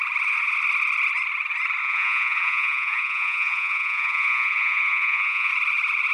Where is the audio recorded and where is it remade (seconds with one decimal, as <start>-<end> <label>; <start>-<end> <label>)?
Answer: 0.0-1.8 recorded; 1.8-5.5 remade; 5.5-6.1 recorded